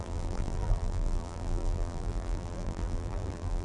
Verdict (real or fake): fake